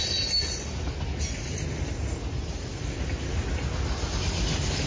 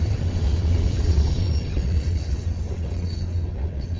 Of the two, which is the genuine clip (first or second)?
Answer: first